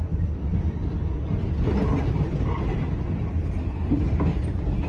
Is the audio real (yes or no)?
yes